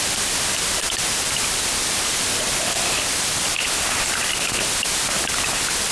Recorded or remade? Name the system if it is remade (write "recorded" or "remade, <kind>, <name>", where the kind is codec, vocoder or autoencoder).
recorded